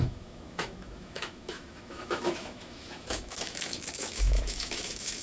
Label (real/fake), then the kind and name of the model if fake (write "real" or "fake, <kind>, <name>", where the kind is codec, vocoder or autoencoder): fake, autoencoder, DAC-VAE